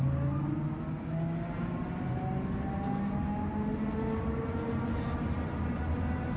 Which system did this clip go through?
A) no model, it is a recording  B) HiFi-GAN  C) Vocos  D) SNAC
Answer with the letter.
A